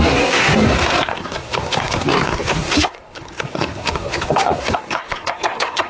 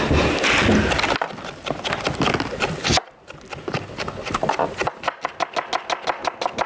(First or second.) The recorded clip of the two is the second